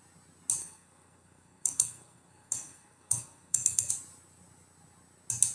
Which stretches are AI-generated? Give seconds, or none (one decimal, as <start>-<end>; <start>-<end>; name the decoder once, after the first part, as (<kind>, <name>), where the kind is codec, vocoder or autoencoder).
0.6-3.9 (codec, SNAC)